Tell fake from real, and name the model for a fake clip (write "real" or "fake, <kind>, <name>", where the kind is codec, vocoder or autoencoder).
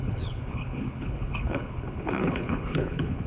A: fake, codec, HILCodec